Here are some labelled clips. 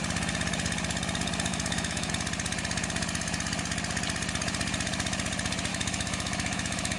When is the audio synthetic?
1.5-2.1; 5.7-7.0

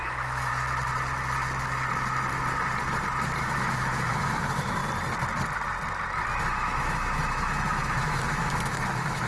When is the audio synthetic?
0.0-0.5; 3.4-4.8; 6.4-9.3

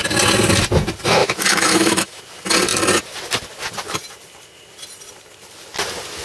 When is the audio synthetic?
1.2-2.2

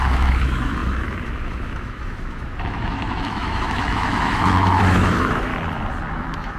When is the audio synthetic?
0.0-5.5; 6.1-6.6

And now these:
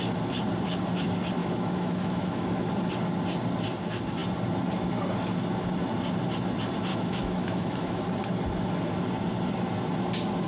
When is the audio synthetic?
1.4-2.5; 6.9-8.0